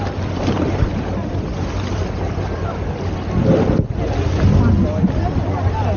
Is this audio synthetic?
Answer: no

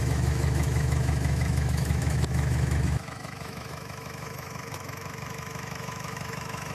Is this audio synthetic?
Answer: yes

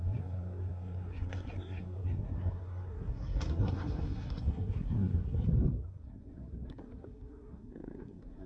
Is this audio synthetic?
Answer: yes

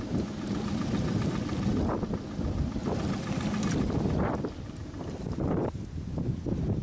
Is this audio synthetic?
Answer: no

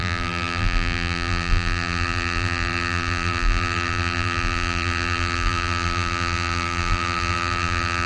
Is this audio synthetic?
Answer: yes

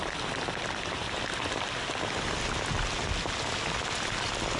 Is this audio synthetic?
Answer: no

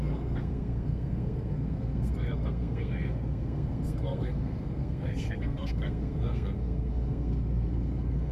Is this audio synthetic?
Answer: yes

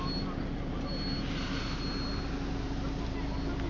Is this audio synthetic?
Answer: no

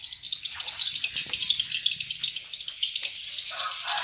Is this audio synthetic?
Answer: no